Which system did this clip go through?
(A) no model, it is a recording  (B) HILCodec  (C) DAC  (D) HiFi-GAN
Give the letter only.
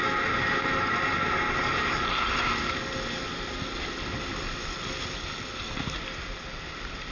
A